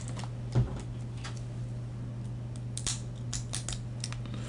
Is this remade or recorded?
recorded